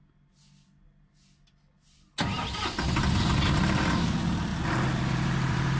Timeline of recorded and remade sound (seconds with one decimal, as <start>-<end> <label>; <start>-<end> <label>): 0.0-3.5 recorded; 3.5-4.5 remade; 4.5-5.1 recorded; 5.1-5.8 remade